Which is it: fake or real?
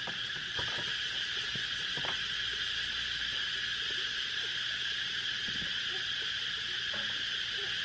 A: real